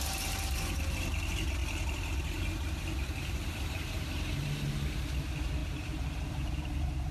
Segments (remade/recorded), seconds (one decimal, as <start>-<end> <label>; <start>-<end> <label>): 0.0-1.6 remade; 1.6-3.5 recorded; 3.5-7.1 remade